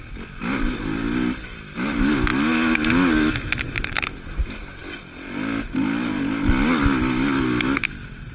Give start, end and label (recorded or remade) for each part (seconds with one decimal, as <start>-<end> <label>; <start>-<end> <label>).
0.0-8.3 recorded